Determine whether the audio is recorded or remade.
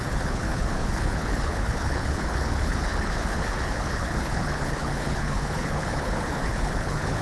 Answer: remade